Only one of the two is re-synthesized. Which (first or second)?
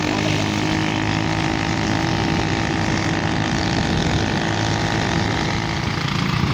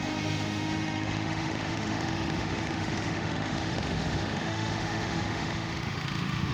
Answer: second